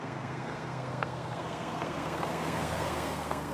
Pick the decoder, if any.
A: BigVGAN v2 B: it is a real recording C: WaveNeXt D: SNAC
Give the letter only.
D